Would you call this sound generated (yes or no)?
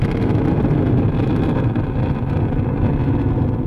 no